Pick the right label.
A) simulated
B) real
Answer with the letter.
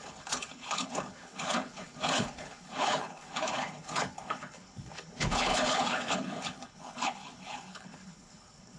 A